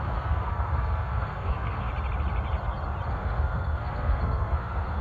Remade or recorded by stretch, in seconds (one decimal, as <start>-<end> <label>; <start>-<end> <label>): 0.0-1.9 remade; 1.9-3.1 recorded; 3.1-5.0 remade

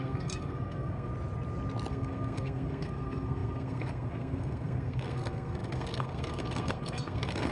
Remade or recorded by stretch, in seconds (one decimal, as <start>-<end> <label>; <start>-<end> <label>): 0.0-1.1 remade; 1.1-1.9 recorded; 1.9-7.5 remade

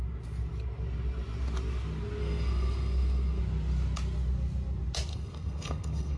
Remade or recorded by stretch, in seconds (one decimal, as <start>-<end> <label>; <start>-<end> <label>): 0.0-2.2 recorded; 2.2-3.4 remade; 3.4-5.1 recorded; 5.1-6.2 remade